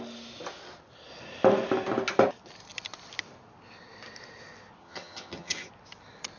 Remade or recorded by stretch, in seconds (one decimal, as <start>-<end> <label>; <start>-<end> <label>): 0.0-4.8 recorded; 4.8-5.7 remade; 5.7-6.4 recorded